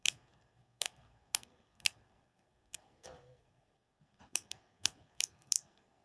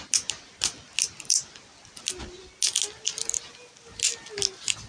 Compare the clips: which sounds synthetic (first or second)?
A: first